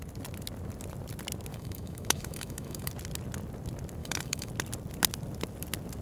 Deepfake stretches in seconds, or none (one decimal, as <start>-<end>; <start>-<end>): 1.5-2.9; 4.0-4.5